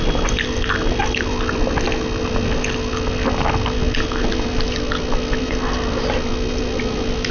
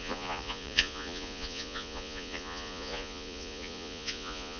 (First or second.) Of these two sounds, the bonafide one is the first